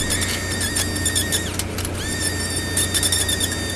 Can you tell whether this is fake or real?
real